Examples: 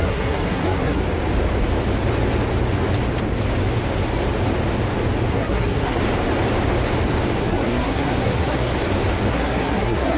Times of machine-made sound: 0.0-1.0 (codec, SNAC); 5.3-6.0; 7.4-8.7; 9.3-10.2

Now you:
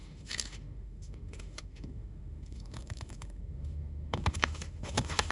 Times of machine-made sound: 0.0-5.3 (autoencoder, DAC-VAE)

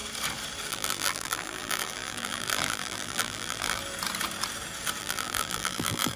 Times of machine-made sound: 0.7-3.8 (vocoder, BigVGAN v2); 5.0-6.2

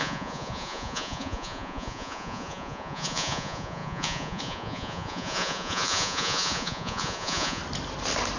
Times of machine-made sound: 0.0-7.6 (vocoder, Vocos)

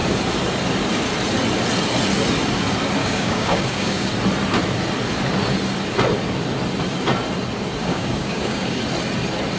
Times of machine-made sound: 3.0-4.1 (codec, DAC); 7.8-8.8